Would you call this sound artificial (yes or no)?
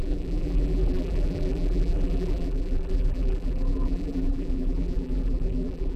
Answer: yes